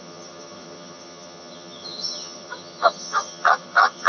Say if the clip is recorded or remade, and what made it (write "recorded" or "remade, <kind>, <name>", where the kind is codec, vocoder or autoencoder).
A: remade, vocoder, HiFi-GAN